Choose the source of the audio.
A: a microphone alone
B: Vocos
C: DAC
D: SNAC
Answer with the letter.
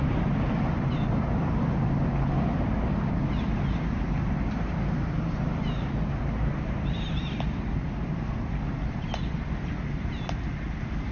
A